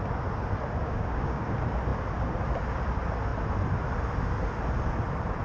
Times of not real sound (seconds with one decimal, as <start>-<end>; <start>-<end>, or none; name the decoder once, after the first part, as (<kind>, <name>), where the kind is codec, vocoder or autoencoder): 0.8-1.4 (codec, DAC)